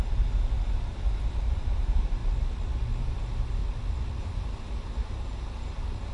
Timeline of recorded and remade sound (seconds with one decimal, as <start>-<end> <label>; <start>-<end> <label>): 0.0-2.2 remade; 2.2-3.0 recorded; 3.0-3.6 remade; 3.6-4.2 recorded; 4.2-6.1 remade